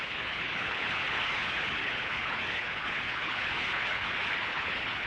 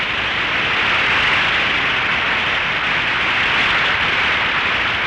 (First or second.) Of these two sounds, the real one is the second